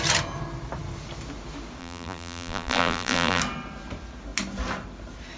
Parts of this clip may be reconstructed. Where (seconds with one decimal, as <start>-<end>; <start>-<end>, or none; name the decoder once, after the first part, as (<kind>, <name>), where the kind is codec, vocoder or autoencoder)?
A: 1.8-3.4 (vocoder, BigVGAN v2)

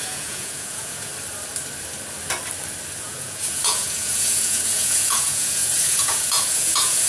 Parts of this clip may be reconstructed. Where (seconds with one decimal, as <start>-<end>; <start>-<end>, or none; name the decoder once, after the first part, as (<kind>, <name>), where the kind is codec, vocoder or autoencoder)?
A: 0.0-1.1 (vocoder, Vocos); 3.0-7.1

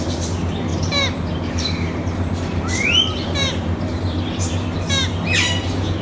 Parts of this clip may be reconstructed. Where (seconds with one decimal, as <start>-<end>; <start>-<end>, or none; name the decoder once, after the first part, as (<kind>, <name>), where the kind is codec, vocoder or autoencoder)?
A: 0.7-4.0 (vocoder, BigVGAN v2)

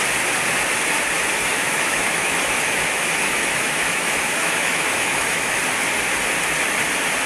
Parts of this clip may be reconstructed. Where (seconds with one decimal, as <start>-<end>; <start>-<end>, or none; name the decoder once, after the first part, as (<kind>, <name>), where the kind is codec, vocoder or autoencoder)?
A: 1.5-5.6 (autoencoder, DAC-VAE)

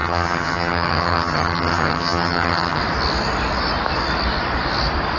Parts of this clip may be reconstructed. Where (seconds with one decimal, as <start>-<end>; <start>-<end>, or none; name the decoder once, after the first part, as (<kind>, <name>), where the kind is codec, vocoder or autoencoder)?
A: 0.0-2.8 (vocoder, HiFi-GAN)